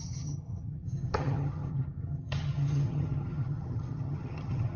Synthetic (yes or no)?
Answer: yes